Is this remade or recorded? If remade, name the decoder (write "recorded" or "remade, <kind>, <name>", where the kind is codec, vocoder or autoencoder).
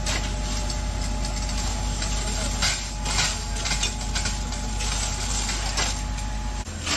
recorded